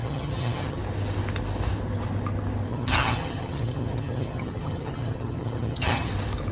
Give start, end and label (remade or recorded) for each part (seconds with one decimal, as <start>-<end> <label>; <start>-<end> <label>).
0.0-0.8 remade; 0.8-2.7 recorded; 2.7-6.1 remade; 6.1-6.5 recorded